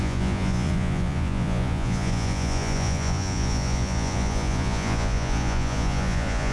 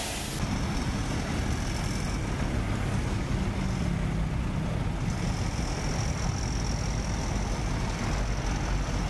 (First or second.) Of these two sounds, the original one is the second